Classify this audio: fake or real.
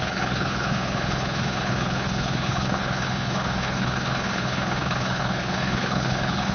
fake